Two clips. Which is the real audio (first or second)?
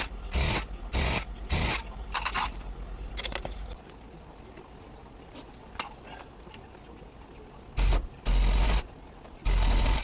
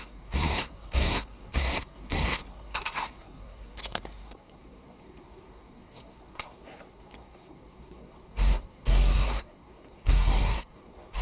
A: first